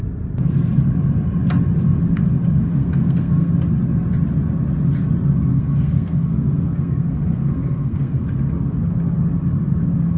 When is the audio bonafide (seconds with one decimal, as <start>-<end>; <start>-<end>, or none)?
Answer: 0.0-2.7; 3.5-5.5; 8.2-10.2